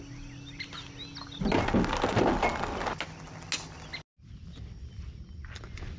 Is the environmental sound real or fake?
real